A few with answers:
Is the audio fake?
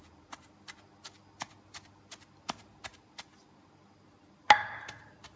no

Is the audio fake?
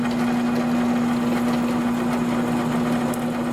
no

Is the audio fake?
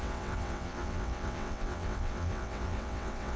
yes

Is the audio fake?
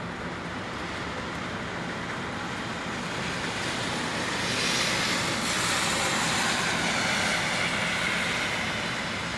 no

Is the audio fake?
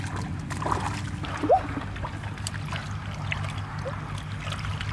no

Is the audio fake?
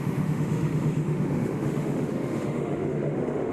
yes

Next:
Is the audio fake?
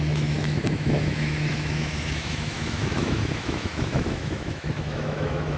yes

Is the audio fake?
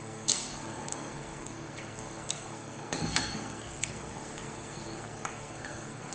yes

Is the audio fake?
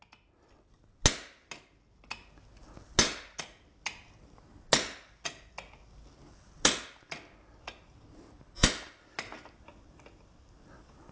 no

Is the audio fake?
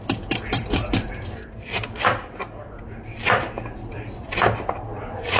yes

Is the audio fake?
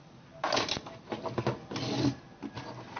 no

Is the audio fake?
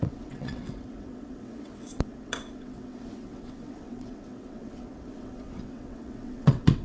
yes